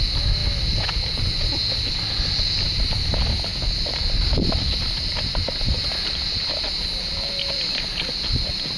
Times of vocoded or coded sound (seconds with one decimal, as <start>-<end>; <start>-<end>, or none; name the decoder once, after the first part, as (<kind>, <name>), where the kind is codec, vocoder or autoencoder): 0.0-0.4 (vocoder, BigVGAN v2); 1.9-3.5; 4.2-8.8